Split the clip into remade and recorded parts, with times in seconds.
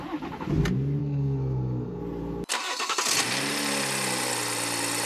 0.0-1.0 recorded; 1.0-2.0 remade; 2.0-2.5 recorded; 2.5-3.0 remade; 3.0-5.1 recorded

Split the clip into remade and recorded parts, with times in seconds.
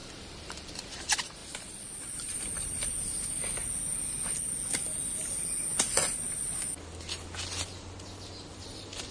0.0-3.4 remade; 3.4-8.5 recorded; 8.5-9.1 remade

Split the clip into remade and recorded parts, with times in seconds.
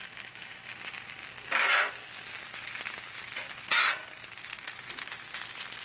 0.0-0.7 remade; 0.7-5.8 recorded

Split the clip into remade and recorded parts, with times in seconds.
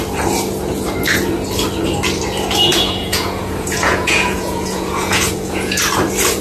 0.0-2.7 recorded; 2.7-5.8 remade; 5.8-6.4 recorded